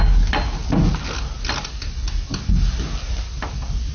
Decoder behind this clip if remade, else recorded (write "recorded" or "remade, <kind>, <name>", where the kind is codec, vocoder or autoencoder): recorded